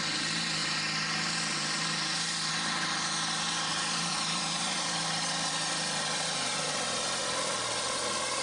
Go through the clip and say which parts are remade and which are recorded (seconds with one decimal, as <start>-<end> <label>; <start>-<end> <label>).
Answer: 0.0-3.7 recorded; 3.7-7.2 remade; 7.2-8.4 recorded